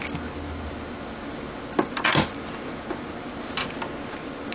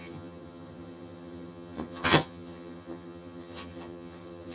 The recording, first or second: first